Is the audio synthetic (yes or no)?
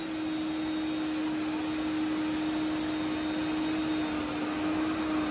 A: no